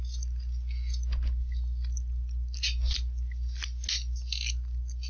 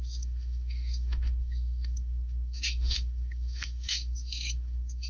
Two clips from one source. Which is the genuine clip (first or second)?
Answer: first